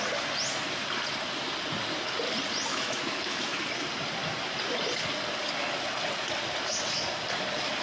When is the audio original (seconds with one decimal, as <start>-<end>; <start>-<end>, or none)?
0.0-2.7; 3.6-7.8